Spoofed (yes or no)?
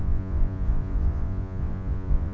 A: yes